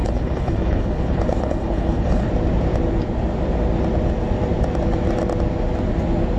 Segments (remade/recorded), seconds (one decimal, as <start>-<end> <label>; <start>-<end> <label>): 0.0-2.3 remade; 2.3-6.4 recorded